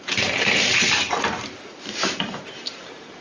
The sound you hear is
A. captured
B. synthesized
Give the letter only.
B